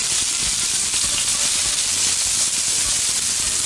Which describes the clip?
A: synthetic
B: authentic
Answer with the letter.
B